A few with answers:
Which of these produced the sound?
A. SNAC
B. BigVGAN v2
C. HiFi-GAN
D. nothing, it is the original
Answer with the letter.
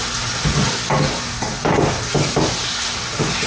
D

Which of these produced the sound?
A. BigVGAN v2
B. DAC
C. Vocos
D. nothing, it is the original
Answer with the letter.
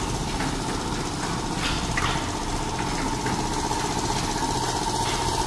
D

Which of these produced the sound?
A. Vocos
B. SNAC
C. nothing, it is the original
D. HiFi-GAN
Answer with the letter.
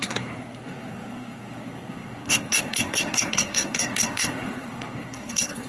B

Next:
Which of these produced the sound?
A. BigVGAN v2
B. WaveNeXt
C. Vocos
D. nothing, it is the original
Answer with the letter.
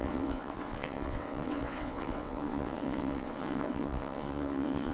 B